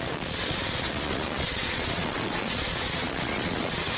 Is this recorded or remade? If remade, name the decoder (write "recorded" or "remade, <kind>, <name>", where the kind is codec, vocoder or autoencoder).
remade, vocoder, Vocos